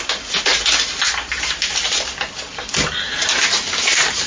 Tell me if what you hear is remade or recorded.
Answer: recorded